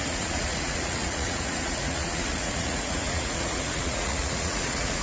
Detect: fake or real fake